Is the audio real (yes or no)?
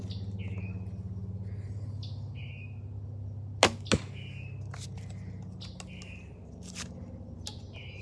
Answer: yes